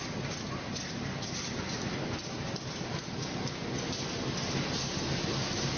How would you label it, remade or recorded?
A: recorded